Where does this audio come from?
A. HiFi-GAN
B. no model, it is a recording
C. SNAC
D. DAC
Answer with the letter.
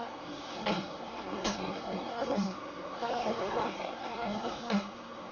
C